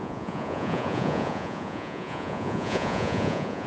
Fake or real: fake